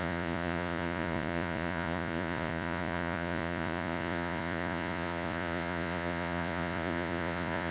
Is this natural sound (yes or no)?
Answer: no